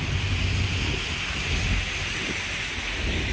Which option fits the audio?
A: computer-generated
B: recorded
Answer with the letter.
B